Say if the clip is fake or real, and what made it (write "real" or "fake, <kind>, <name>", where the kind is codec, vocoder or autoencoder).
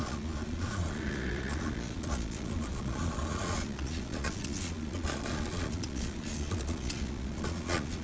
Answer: fake, vocoder, Vocos